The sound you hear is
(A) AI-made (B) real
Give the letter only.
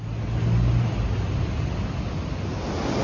B